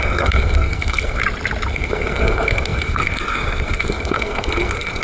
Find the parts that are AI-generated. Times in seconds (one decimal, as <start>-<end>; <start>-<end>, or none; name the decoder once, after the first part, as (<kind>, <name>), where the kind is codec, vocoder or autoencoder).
0.0-1.2 (codec, SNAC); 1.7-5.0